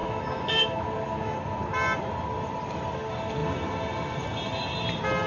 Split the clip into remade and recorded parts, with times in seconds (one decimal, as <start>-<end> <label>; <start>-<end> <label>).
0.0-0.8 remade; 0.8-5.3 recorded